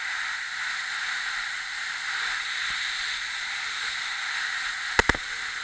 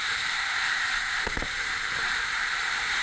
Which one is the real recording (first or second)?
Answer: first